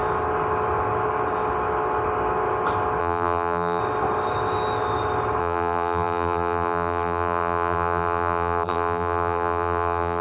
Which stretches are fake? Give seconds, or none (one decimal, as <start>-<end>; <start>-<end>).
3.0-3.8; 5.4-10.2